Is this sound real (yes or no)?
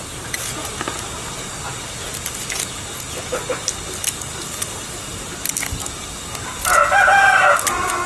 yes